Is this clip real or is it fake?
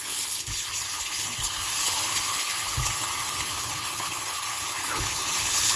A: fake